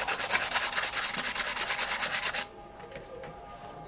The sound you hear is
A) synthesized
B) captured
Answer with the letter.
B